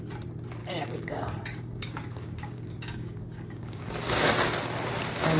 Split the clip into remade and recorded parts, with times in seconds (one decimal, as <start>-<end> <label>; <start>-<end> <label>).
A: 0.0-0.6 recorded; 0.6-3.8 remade; 3.8-5.4 recorded